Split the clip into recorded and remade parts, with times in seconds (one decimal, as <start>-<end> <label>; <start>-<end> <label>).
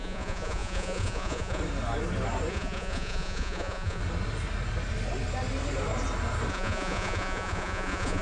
0.0-1.6 remade; 1.6-2.5 recorded; 2.5-4.0 remade; 4.0-6.5 recorded; 6.5-8.2 remade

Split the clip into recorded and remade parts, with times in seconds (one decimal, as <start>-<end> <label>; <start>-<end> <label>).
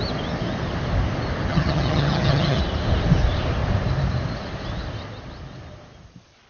0.0-1.5 recorded; 1.5-2.6 remade; 2.6-6.5 recorded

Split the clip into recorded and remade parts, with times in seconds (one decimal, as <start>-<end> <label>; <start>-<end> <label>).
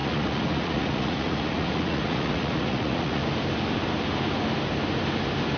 0.0-3.2 remade; 3.2-5.6 recorded